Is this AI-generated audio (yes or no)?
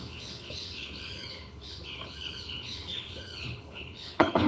yes